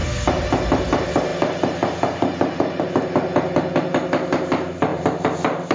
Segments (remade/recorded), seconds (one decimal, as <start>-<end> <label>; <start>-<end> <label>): 0.0-1.3 recorded; 1.3-2.8 remade; 2.8-4.9 recorded; 4.9-5.7 remade